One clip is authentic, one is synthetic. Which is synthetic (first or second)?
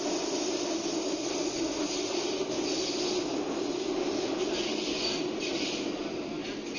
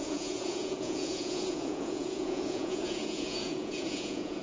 second